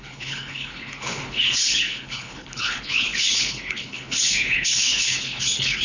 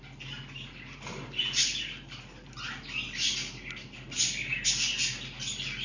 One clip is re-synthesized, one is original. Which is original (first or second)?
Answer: second